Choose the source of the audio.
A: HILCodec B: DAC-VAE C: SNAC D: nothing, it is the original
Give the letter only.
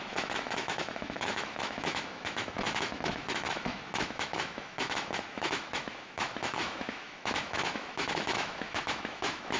B